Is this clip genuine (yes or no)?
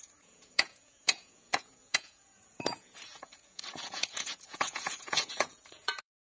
no